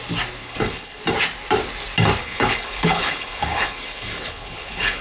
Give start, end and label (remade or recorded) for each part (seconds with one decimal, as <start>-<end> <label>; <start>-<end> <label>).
0.0-0.4 recorded; 0.4-1.0 remade; 1.0-2.2 recorded; 2.2-5.0 remade